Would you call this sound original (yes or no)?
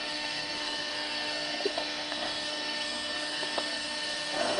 no